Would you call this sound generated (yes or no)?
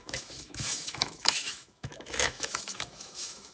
yes